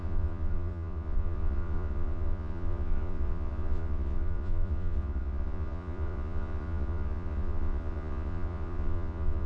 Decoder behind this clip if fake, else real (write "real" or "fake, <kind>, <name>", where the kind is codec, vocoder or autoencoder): fake, vocoder, Vocos